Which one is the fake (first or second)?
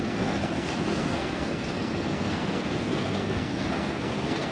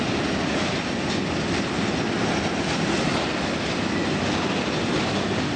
first